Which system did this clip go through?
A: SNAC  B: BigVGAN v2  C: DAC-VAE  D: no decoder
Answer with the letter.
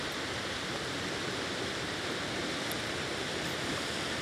B